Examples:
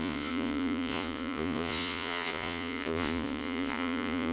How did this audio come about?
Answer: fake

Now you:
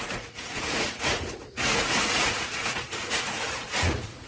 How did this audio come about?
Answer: fake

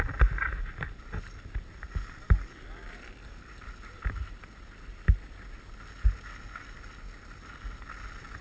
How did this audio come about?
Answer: real